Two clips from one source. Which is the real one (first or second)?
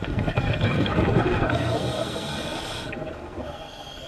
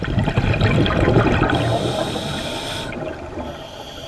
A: second